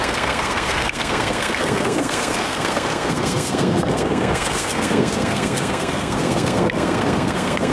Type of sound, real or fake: fake